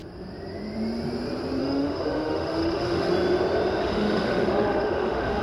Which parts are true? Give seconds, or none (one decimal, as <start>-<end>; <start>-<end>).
0.0-1.6; 3.1-3.8